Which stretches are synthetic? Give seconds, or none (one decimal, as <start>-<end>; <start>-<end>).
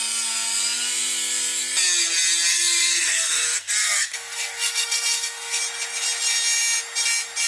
2.5-5.6